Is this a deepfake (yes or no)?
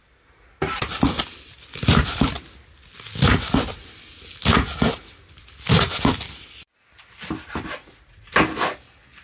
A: no